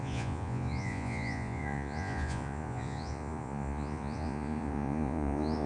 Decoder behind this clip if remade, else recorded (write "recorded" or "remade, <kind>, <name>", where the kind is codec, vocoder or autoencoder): remade, vocoder, Vocos